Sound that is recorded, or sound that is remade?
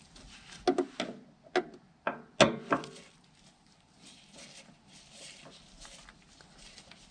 recorded